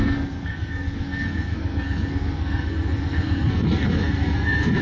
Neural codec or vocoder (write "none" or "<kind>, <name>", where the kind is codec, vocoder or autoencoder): codec, SNAC